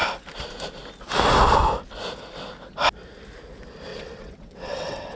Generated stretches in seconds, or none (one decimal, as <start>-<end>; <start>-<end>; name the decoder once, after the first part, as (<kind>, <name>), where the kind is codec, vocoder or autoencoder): 3.9-5.2 (vocoder, WaveNeXt)